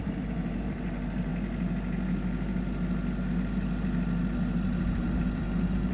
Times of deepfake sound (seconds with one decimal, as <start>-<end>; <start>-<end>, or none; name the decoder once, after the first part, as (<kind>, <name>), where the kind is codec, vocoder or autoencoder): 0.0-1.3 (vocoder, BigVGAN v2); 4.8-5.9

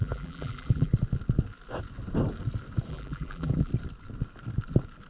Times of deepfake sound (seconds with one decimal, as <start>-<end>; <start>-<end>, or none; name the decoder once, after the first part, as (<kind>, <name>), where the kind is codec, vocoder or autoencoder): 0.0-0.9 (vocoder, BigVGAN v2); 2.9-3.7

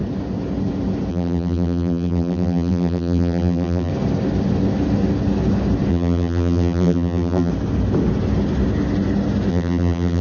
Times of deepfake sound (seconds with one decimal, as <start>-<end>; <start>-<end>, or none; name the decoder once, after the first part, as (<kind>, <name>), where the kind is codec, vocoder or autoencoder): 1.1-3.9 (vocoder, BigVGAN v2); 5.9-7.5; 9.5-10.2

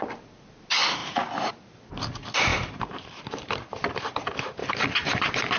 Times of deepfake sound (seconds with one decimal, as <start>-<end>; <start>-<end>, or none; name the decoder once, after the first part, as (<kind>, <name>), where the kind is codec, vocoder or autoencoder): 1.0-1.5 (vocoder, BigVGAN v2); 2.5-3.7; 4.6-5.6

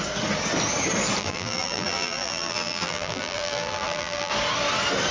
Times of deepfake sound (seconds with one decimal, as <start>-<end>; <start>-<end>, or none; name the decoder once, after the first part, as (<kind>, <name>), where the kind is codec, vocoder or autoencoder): 1.2-4.3 (vocoder, BigVGAN v2)

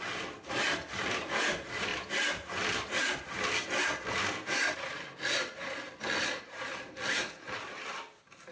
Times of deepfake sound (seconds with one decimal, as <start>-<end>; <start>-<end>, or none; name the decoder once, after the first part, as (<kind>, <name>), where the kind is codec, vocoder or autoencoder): 0.0-1.9 (vocoder, BigVGAN v2); 6.7-8.5